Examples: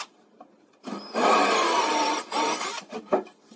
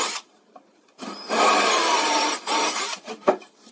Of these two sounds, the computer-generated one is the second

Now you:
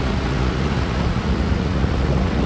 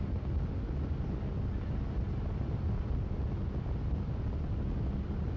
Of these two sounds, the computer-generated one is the first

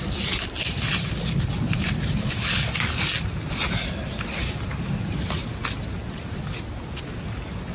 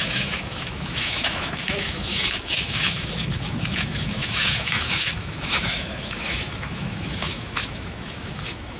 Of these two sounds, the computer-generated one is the second